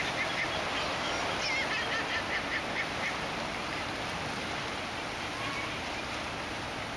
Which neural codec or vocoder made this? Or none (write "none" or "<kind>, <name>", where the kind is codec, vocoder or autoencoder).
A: none